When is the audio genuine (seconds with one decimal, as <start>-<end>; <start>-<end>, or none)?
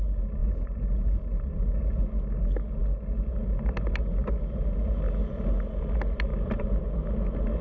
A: 0.0-0.4; 2.0-7.6